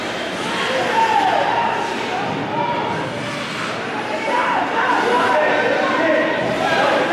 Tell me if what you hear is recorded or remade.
recorded